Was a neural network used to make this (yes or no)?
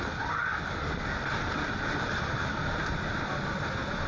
no